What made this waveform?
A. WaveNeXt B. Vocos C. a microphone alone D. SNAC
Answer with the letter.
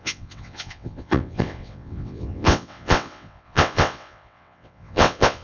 A